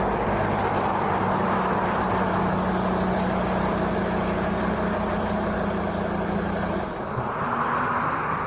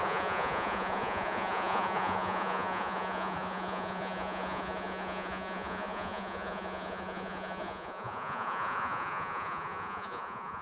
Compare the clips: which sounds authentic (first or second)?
first